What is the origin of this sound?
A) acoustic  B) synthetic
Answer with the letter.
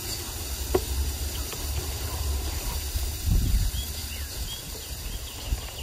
A